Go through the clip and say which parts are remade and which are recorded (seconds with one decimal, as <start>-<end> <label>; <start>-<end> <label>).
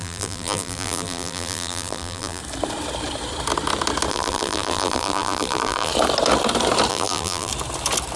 0.0-2.4 remade; 2.4-4.1 recorded; 4.1-5.9 remade; 5.9-6.9 recorded; 6.9-7.5 remade; 7.5-8.2 recorded